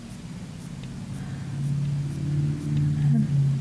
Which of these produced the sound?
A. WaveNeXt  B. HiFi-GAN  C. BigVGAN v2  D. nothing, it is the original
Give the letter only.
D